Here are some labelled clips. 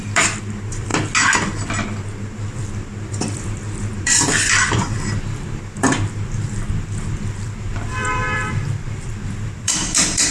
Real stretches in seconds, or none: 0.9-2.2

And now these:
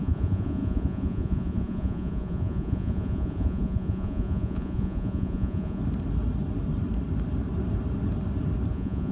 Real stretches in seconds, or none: 5.8-8.7

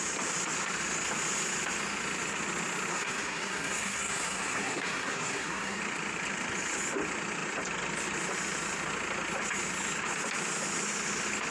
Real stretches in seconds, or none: 0.0-2.9; 5.8-11.5

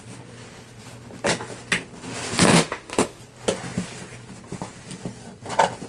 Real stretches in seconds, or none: 0.0-2.5; 3.2-5.9

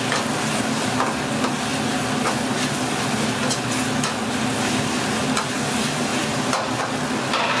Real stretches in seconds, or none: 0.0-7.6

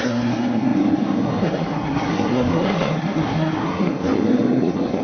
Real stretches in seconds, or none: none